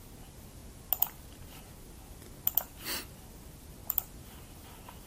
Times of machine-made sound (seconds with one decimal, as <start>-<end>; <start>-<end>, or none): none